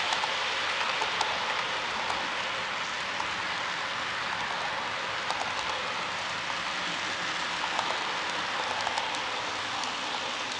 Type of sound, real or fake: real